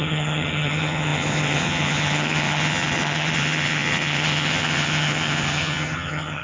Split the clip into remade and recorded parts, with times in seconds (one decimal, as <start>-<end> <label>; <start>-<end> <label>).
0.0-6.4 remade